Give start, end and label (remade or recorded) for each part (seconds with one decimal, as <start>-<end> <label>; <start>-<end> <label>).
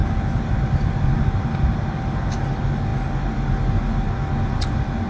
0.0-5.1 recorded